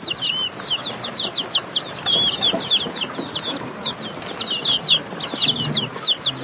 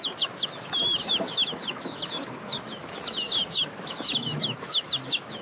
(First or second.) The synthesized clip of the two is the second